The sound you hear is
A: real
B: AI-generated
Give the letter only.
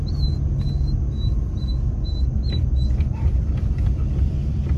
A